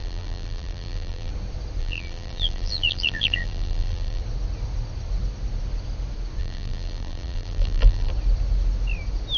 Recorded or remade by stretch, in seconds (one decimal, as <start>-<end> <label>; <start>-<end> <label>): 0.0-1.3 remade; 1.3-1.8 recorded; 1.8-4.2 remade; 4.2-6.4 recorded; 6.4-8.1 remade; 8.1-9.4 recorded